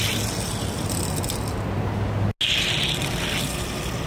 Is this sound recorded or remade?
recorded